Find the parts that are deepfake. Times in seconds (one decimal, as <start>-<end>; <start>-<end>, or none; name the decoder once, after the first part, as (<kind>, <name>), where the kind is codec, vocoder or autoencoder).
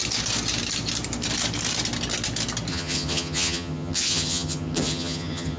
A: 2.7-5.6 (vocoder, HiFi-GAN)